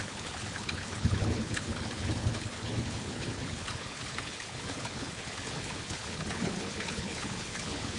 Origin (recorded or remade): remade